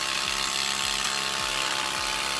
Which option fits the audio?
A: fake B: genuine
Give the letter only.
B